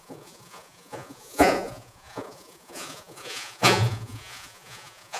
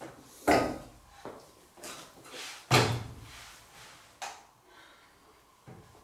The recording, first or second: second